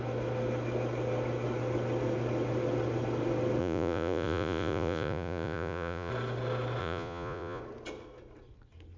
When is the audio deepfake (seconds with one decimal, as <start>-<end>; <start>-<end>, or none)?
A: 3.6-6.1; 6.8-7.6